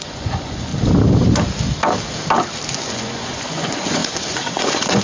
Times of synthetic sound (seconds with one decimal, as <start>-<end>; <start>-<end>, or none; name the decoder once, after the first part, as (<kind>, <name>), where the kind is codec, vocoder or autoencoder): 0.0-0.7 (vocoder, Vocos); 2.7-5.0